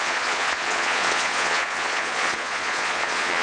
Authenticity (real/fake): fake